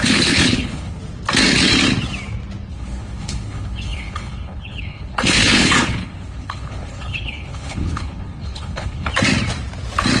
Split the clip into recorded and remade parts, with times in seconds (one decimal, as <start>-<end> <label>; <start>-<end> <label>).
0.0-1.0 remade; 1.0-2.7 recorded; 2.7-9.1 remade; 9.1-10.2 recorded